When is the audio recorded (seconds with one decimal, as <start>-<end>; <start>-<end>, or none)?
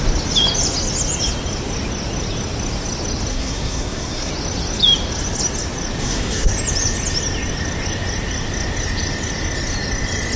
0.0-3.3; 4.3-6.0; 6.5-10.4